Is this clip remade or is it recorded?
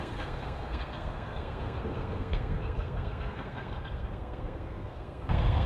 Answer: remade